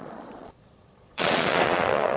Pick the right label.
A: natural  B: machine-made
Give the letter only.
B